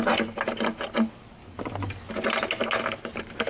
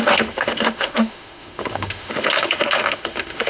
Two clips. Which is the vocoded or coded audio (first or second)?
second